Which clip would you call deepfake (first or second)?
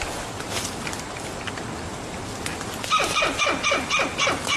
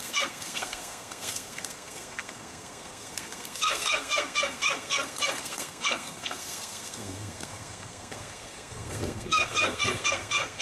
second